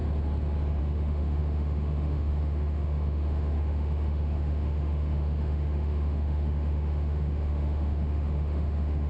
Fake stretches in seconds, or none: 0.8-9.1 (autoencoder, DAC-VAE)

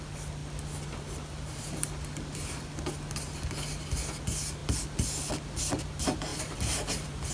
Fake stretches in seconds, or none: 6.3-7.3 (vocoder, BigVGAN v2)

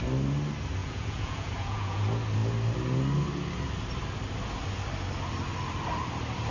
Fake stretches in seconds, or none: 0.8-2.0 (vocoder, Vocos)

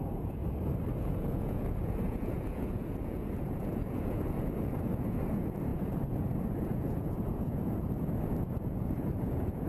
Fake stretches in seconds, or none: 0.0-0.4 (vocoder, Vocos); 0.9-9.7

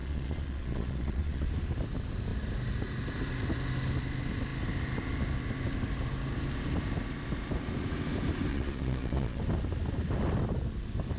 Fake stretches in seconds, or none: 0.0-1.5 (vocoder, Vocos); 8.5-9.4

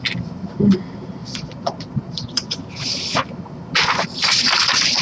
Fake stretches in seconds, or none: 1.2-2.5 (vocoder, Vocos)

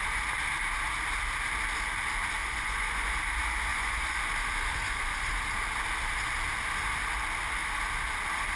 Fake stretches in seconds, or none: 2.4-3.2 (vocoder, Vocos); 3.7-4.2; 4.7-5.4

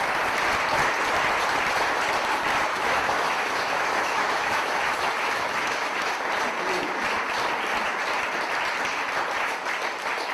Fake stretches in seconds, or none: 2.7-6.1 (autoencoder, DAC-VAE)